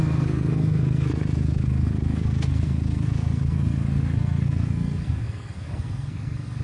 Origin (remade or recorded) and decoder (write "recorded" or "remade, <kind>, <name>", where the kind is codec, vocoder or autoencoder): remade, codec, SNAC